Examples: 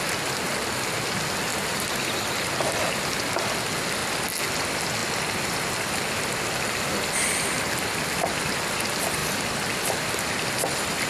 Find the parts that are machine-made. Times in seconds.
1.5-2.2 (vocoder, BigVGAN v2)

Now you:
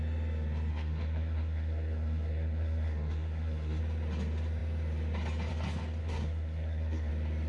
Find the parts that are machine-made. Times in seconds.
0.7-3.8 (codec, SNAC); 6.0-7.1

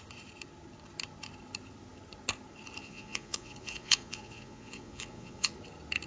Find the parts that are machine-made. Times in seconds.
2.8-5.5 (vocoder, Vocos)

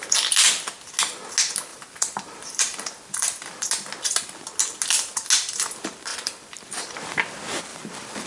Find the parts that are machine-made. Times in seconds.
1.7-3.7 (vocoder, BigVGAN v2); 6.1-6.8; 7.7-8.3

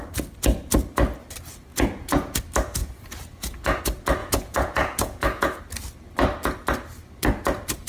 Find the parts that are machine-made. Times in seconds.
1.7-2.4 (vocoder, Vocos); 2.8-3.8; 4.2-5.6

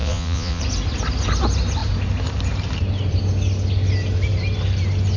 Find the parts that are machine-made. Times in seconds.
0.0-0.6 (vocoder, Vocos)

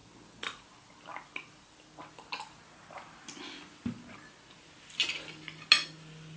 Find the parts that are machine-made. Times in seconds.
none